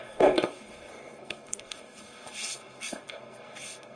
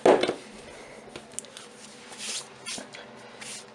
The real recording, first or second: second